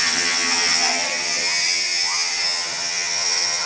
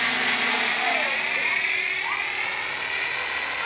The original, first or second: second